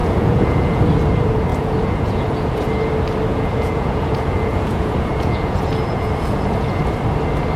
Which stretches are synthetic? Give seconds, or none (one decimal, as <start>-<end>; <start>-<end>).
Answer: 0.0-0.8; 1.5-2.7; 3.3-6.8